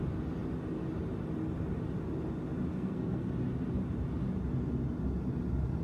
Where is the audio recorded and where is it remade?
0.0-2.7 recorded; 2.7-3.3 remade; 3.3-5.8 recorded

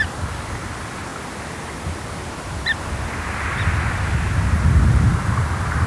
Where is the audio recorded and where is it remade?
0.0-5.9 recorded

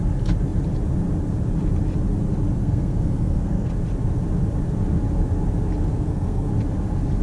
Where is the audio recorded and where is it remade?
0.0-2.6 recorded; 2.6-3.7 remade; 3.7-5.9 recorded; 5.9-6.5 remade; 6.5-7.2 recorded